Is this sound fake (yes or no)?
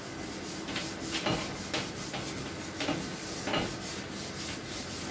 no